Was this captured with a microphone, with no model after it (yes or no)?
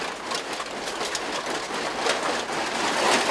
yes